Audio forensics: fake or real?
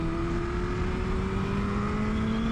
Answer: real